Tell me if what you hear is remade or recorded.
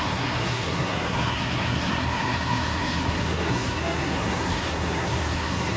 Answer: remade